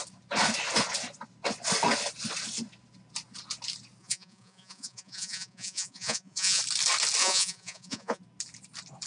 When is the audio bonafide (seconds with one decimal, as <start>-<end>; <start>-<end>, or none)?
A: 0.0-4.0; 6.6-7.2; 8.2-9.1